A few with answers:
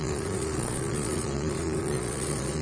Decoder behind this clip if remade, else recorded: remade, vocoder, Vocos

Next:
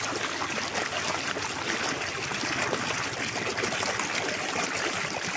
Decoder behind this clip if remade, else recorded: recorded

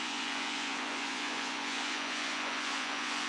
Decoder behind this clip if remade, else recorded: remade, vocoder, Vocos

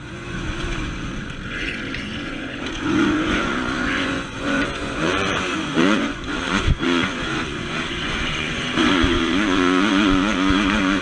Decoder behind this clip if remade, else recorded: remade, vocoder, Vocos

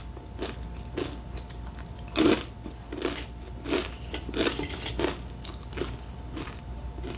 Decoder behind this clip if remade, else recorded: recorded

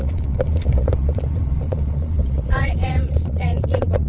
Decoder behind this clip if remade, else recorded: remade, vocoder, Vocos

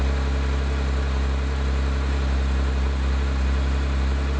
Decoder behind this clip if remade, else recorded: recorded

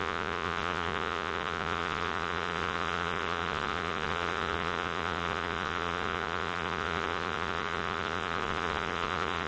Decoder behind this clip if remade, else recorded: remade, vocoder, Vocos